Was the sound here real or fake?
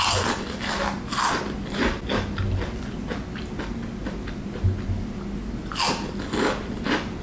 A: real